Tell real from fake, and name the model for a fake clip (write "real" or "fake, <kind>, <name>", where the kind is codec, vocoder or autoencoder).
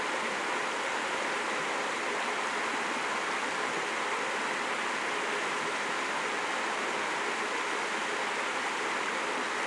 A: real